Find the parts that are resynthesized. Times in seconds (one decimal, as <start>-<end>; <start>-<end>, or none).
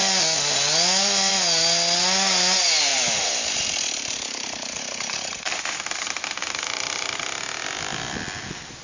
2.9-7.2